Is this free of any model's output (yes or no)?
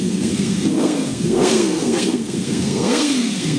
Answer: no